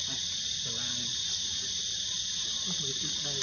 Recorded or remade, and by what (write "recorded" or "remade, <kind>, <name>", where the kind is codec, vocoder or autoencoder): recorded